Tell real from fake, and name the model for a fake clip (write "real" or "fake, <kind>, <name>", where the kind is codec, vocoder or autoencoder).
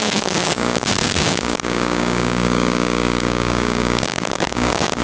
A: fake, codec, DAC